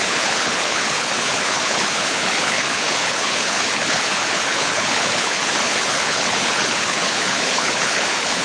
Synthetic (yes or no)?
yes